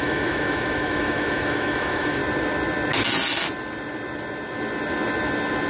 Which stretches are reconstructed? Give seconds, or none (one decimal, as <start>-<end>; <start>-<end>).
0.0-2.2

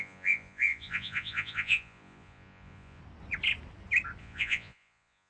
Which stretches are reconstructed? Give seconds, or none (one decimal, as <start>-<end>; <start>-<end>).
0.0-3.0; 4.2-5.3